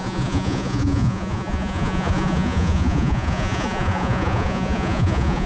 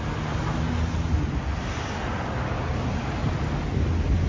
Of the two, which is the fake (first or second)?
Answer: first